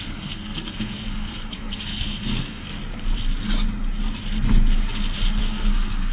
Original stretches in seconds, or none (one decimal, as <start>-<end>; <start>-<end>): 2.8-5.4